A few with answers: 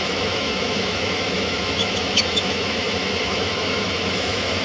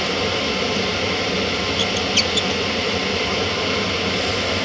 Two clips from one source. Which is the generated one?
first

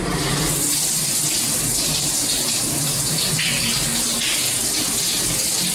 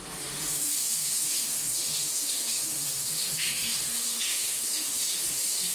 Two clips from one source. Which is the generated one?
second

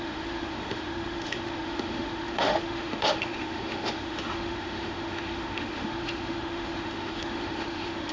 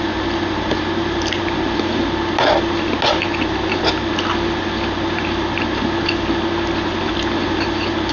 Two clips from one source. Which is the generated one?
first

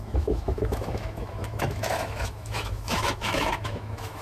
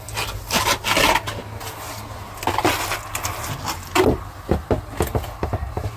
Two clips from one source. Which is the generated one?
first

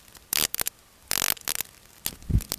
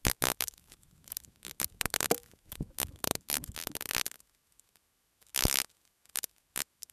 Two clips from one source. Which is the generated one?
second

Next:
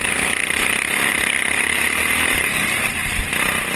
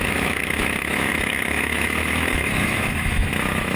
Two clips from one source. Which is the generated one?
second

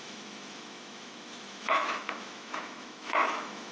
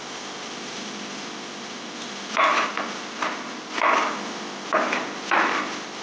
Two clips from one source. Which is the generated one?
first